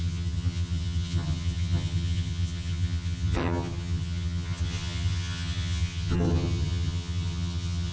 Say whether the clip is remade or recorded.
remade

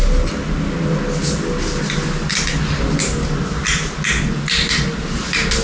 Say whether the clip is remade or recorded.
recorded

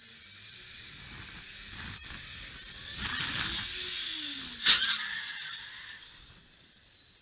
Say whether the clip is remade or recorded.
recorded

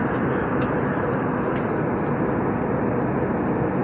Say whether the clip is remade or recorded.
recorded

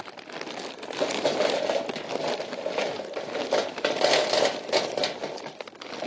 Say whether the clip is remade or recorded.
recorded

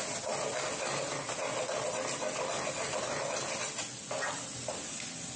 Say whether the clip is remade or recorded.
recorded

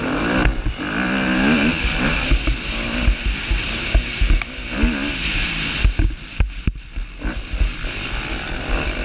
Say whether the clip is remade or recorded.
recorded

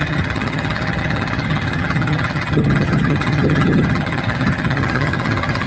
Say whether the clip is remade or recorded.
remade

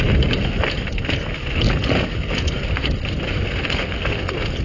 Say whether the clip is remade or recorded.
recorded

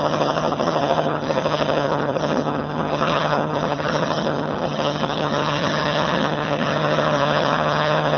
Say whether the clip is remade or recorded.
remade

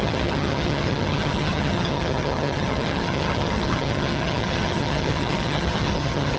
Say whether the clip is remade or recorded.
remade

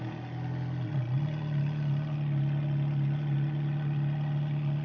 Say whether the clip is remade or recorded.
recorded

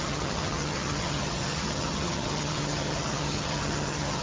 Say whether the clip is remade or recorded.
remade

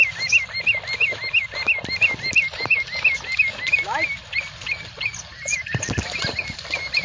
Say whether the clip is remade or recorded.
recorded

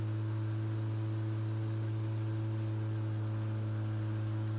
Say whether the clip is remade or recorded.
recorded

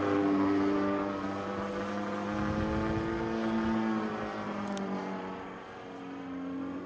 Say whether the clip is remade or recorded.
recorded